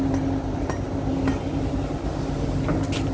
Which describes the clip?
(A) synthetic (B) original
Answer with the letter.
B